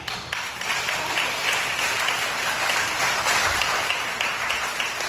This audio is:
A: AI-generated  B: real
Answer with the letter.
B